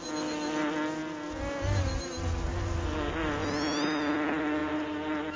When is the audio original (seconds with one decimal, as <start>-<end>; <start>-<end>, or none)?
0.0-5.4